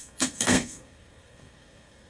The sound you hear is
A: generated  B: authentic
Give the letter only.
A